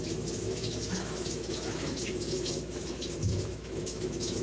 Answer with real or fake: fake